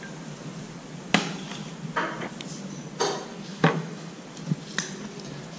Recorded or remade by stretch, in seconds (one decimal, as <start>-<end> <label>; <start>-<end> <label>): 0.0-3.5 recorded; 3.5-4.1 remade; 4.1-5.6 recorded

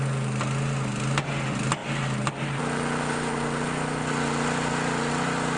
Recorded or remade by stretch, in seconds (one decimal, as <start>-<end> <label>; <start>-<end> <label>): 0.0-5.6 recorded

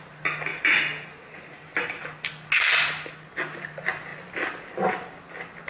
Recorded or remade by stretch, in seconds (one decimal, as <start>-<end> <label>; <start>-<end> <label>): 0.0-0.5 recorded; 0.5-2.3 remade; 2.3-4.1 recorded; 4.1-4.9 remade; 4.9-5.7 recorded

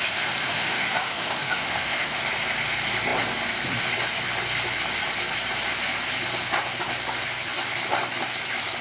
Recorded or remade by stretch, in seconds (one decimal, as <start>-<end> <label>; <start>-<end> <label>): 0.0-0.4 recorded; 0.4-2.2 remade; 2.2-8.8 recorded